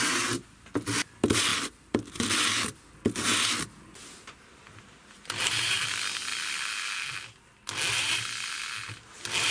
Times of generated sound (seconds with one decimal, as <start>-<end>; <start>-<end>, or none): none